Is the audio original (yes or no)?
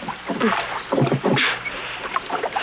yes